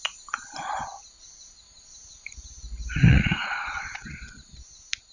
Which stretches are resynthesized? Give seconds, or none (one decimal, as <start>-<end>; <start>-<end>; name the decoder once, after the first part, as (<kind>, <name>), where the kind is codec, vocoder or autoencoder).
3.1-4.3 (vocoder, WaveNeXt)